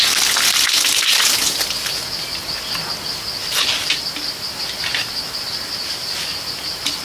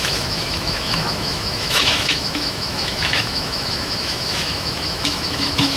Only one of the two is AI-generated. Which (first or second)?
second